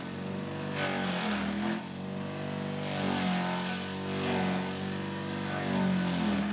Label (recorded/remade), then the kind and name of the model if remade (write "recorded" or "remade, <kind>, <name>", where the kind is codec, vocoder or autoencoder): recorded